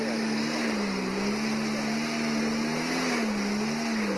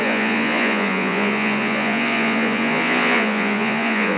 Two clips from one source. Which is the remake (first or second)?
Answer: second